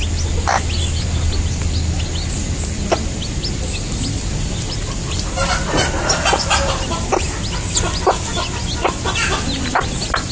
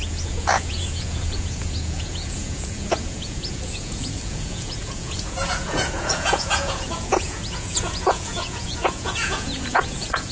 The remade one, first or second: second